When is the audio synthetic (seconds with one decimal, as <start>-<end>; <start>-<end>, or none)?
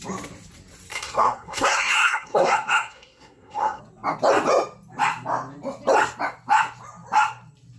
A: 0.9-3.8